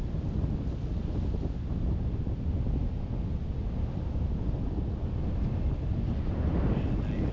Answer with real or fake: real